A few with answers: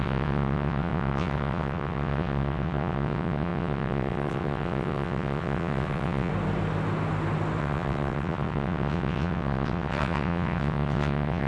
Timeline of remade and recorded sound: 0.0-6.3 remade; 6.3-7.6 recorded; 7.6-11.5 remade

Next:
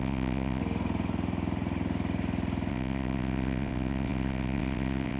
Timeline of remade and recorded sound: 0.0-0.6 remade; 0.6-2.7 recorded; 2.7-5.2 remade

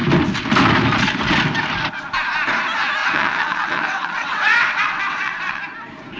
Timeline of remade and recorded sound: 0.0-3.0 recorded; 3.0-5.6 remade; 5.6-6.2 recorded

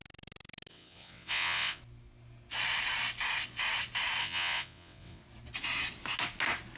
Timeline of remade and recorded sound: 0.0-0.7 recorded; 0.7-1.8 remade; 1.8-4.2 recorded; 4.2-5.2 remade; 5.2-6.8 recorded

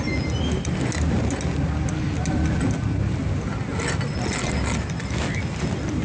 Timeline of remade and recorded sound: 0.0-6.0 recorded